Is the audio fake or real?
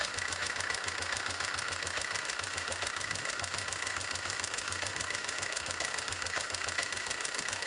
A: fake